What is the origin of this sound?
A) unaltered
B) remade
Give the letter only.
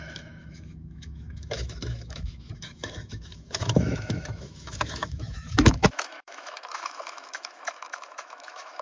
B